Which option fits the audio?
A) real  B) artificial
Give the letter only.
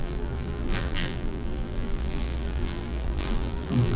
B